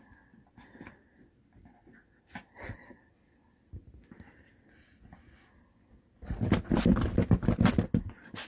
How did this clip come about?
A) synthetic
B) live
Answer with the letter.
B